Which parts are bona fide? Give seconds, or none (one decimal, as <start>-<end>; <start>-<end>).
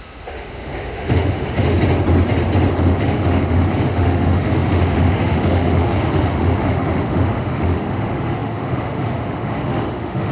1.8-2.7